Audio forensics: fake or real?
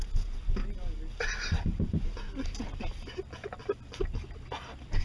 real